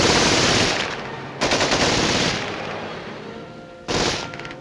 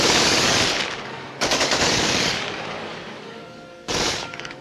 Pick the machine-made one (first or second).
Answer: second